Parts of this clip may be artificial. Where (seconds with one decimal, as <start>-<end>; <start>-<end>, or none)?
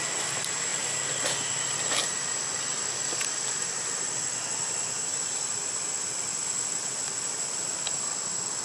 none